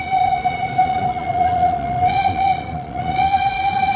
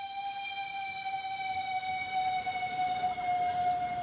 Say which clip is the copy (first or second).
first